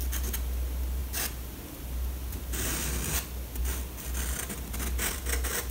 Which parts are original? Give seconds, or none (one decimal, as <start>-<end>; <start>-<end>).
0.0-5.7